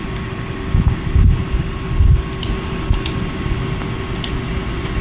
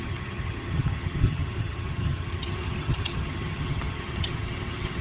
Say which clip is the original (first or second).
first